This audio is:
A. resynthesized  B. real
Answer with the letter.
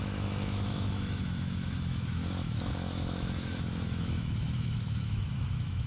A